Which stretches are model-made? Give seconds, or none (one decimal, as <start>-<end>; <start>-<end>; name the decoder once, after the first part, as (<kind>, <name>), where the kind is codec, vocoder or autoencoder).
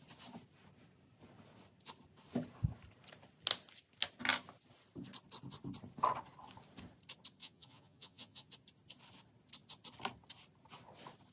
7.4-8.5 (vocoder, Vocos)